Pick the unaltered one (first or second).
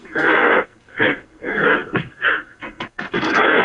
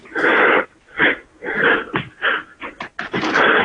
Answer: second